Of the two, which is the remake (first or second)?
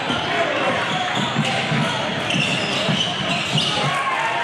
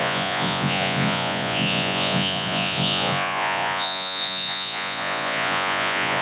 second